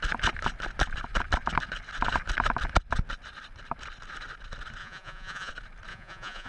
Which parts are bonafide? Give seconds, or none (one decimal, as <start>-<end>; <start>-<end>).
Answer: 0.0-4.8; 5.5-5.9